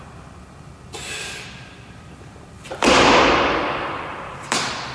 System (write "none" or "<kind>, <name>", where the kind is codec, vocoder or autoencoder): vocoder, BigVGAN v2